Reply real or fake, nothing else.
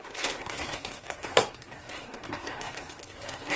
fake